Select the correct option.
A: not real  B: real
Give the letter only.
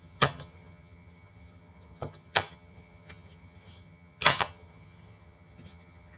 A